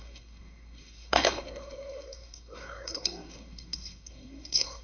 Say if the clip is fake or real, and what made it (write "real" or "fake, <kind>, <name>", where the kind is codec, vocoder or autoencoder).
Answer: fake, codec, SNAC